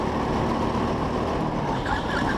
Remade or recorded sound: recorded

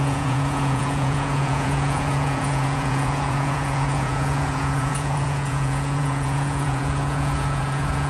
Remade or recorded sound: remade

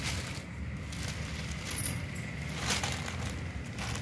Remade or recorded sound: recorded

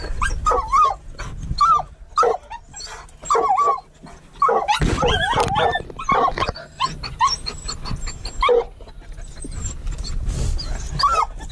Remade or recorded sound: recorded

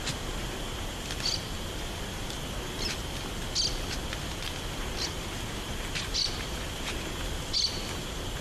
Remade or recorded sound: recorded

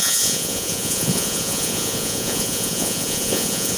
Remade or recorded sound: remade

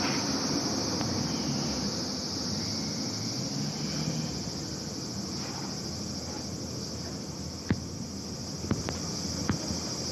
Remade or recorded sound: recorded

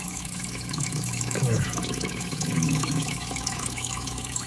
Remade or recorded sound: remade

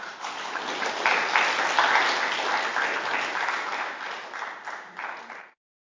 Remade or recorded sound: recorded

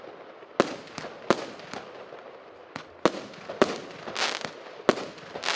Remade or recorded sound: recorded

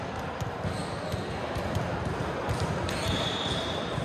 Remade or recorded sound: recorded